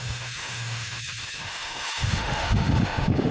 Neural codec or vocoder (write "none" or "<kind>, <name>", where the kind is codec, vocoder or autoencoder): autoencoder, DAC-VAE